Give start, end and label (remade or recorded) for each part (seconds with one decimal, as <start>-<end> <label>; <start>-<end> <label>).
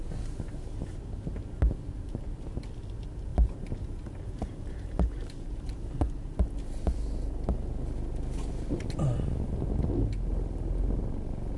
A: 0.0-3.3 recorded; 3.3-6.4 remade; 6.4-11.6 recorded